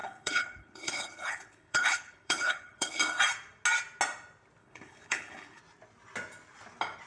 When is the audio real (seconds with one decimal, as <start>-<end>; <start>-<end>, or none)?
3.0-4.6; 5.6-7.1